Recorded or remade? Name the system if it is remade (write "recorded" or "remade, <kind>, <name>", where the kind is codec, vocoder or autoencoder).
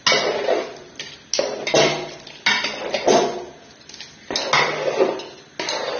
recorded